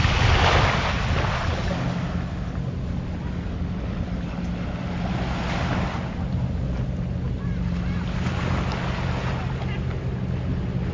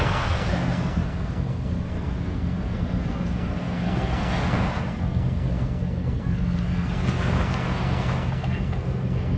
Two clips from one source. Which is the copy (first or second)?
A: second